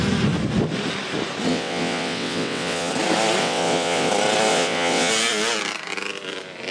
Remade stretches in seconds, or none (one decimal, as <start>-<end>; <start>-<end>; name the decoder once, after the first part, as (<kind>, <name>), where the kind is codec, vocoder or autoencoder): 1.5-2.9 (vocoder, WaveNeXt); 3.4-4.1; 4.5-5.1